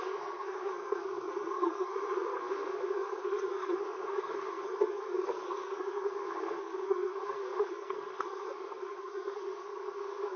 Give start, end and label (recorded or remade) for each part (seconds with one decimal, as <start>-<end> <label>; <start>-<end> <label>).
0.0-10.4 remade